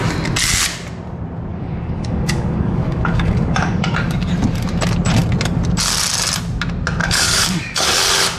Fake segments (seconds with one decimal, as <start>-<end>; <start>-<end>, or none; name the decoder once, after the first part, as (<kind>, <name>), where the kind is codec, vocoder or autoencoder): 1.5-4.3 (codec, DAC); 7.0-7.9

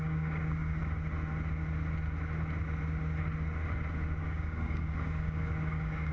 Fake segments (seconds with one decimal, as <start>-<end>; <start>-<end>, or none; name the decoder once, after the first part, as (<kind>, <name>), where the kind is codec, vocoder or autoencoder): 0.0-0.8 (codec, DAC); 4.2-6.1

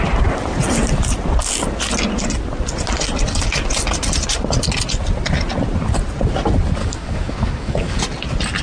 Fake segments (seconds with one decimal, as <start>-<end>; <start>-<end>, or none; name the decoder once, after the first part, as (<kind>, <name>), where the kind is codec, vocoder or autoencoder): 6.8-8.0 (codec, DAC)

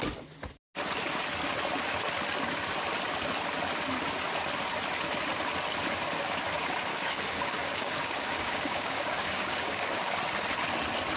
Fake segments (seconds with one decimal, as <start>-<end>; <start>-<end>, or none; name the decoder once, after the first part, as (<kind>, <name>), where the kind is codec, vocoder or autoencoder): 6.9-10.1 (codec, DAC)

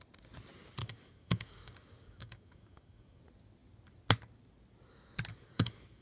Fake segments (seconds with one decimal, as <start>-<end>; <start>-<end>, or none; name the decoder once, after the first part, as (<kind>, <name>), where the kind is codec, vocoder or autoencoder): 0.8-3.2 (codec, DAC); 5.3-6.0

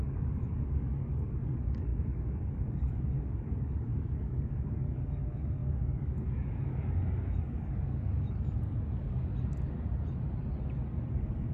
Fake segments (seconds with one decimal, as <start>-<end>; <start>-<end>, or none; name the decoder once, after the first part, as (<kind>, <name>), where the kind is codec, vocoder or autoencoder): 0.0-9.3 (codec, DAC); 11.1-11.5

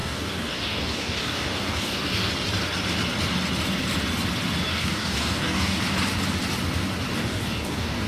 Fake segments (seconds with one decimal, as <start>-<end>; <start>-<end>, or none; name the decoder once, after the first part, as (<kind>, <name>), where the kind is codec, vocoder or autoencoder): 0.0-2.3 (codec, DAC); 4.7-5.8; 7.2-8.1